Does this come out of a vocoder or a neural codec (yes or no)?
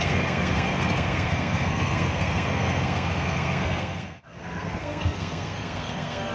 yes